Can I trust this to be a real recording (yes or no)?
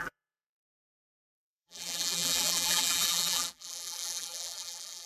no